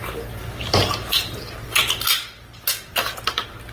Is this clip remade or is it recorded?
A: recorded